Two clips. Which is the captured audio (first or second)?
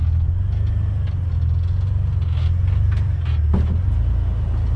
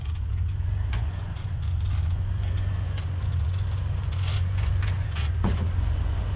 first